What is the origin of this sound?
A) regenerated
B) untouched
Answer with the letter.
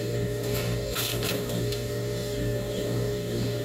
A